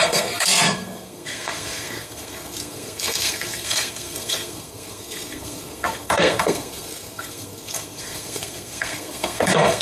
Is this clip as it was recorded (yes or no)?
no